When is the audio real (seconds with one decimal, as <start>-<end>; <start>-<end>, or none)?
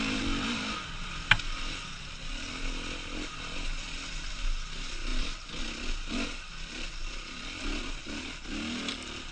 0.0-9.3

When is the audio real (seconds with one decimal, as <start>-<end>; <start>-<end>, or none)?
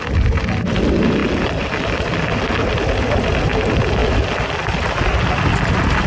0.0-6.1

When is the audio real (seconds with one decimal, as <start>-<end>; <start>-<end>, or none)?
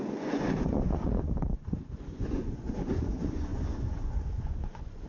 none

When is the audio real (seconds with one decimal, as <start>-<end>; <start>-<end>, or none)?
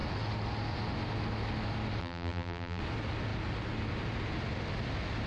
0.0-2.0; 2.8-5.3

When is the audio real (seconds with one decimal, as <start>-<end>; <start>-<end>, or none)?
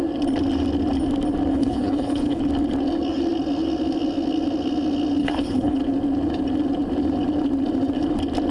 0.0-1.5; 2.4-5.2; 5.8-8.5